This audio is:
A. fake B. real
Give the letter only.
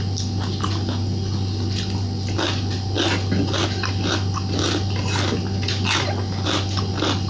B